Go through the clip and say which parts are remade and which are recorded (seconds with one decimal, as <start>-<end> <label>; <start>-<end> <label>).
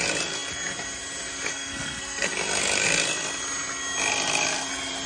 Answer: 0.0-1.5 recorded; 1.5-2.3 remade; 2.3-5.1 recorded